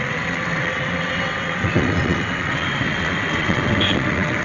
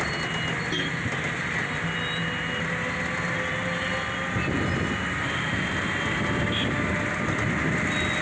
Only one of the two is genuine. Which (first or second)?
second